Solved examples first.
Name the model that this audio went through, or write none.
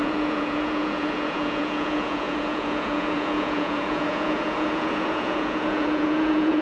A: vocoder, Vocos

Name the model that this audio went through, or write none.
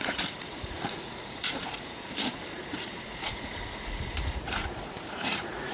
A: vocoder, Vocos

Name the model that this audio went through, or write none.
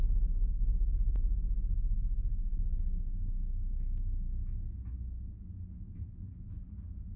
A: none